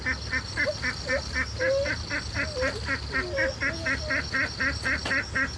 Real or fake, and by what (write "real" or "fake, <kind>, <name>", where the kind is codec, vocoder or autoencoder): real